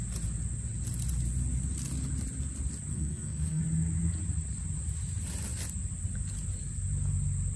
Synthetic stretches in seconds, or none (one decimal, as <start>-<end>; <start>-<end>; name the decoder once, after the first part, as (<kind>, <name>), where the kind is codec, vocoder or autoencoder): 2.9-3.6 (codec, SNAC)